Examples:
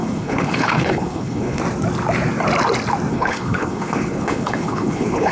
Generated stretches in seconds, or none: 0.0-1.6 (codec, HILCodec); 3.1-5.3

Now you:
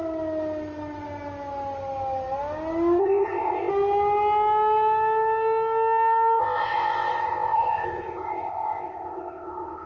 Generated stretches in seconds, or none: 3.0-3.7 (codec, ZipCodec); 6.4-9.9

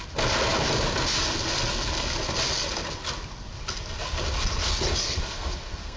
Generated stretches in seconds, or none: 5.0-6.0 (codec, SNAC)

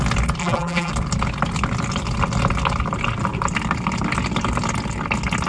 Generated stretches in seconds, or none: 0.4-0.9 (vocoder, BigVGAN v2)